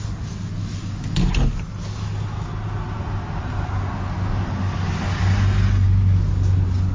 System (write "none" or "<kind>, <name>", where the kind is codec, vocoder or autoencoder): none